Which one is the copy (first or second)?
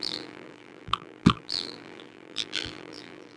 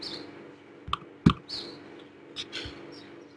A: first